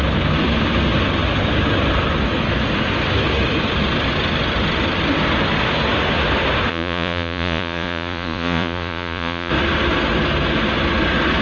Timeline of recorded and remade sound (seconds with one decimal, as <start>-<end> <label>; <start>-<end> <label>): 0.0-6.7 recorded; 6.7-9.5 remade; 9.5-11.4 recorded